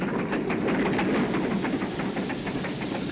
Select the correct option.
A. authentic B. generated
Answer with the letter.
A